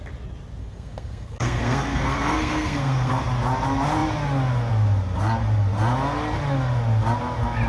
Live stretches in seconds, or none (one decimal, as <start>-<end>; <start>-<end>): 0.0-0.6; 3.2-7.7

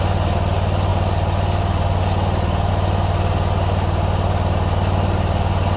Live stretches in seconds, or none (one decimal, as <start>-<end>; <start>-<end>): 0.0-5.8

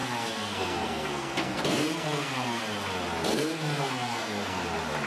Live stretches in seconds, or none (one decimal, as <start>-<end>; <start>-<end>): 2.6-3.3; 4.6-5.1

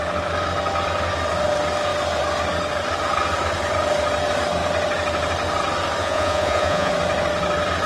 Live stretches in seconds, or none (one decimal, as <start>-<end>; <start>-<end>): 0.0-6.0; 6.9-7.9

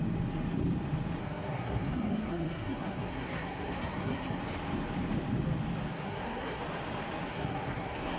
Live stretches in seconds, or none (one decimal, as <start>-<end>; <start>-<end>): 0.0-1.2; 4.4-5.9; 6.6-7.3

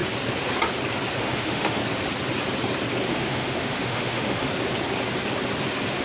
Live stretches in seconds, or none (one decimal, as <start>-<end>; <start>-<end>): 0.0-1.2; 1.8-3.1; 4.5-6.0

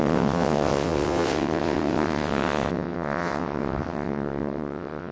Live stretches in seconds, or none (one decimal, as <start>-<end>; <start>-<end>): none

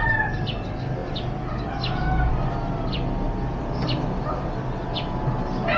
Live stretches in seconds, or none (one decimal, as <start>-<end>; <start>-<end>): 0.0-5.8